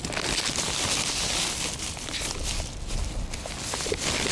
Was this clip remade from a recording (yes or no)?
no